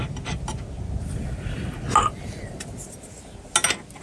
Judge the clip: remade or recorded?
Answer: recorded